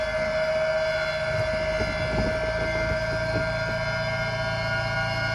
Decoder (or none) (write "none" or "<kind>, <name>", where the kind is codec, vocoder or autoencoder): none